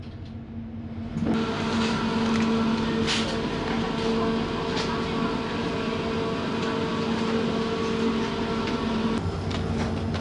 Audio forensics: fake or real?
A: real